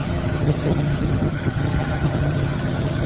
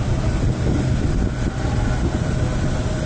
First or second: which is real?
second